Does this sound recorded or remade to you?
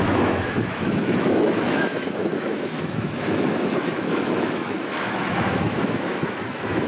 remade